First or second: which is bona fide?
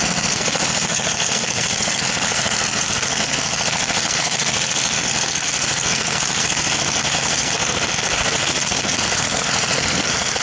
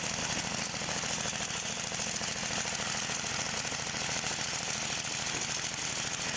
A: second